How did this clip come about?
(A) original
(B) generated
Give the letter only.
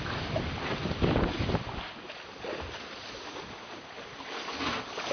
A